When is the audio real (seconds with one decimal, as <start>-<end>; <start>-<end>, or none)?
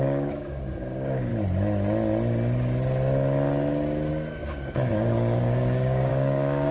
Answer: 1.3-4.1